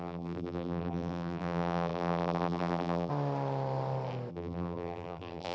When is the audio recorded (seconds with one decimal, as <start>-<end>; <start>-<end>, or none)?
3.1-4.3